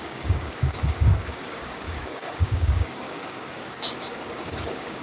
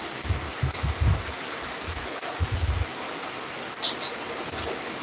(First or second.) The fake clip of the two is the first